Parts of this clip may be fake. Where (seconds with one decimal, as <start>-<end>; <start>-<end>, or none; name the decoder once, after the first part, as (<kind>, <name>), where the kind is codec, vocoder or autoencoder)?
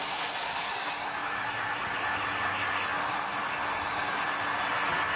0.0-0.7 (codec, SNAC)